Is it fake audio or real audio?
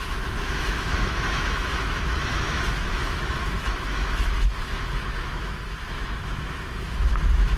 fake